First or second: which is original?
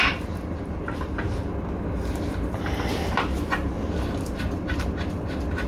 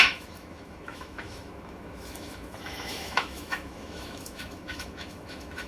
first